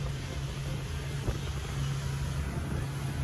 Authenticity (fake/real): real